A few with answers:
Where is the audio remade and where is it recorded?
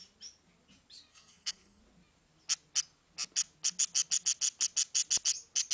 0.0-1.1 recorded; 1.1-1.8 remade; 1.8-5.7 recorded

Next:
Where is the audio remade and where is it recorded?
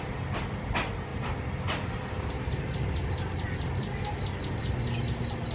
0.0-5.5 recorded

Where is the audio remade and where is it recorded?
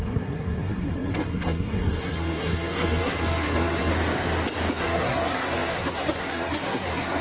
0.0-3.9 remade; 3.9-4.8 recorded; 4.8-7.2 remade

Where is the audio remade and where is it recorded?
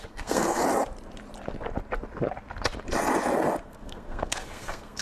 0.0-0.6 remade; 0.6-3.6 recorded; 3.6-5.0 remade